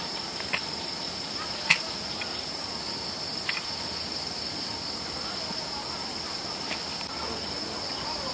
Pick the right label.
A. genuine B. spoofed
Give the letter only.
A